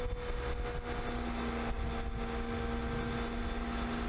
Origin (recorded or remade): recorded